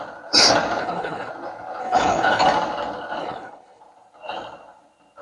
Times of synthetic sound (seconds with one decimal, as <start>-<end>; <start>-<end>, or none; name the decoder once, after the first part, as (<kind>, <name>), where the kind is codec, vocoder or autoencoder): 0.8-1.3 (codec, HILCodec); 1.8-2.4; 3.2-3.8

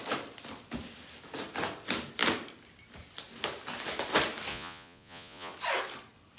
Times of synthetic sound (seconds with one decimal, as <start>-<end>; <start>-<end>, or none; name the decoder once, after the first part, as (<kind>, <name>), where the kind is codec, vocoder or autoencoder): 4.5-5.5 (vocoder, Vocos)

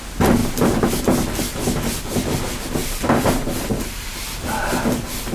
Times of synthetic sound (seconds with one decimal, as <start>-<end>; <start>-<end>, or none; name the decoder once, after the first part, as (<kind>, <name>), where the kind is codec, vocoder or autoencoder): 0.4-1.0 (vocoder, BigVGAN v2); 2.8-4.2